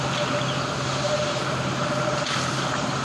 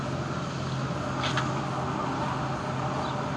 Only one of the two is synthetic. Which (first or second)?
first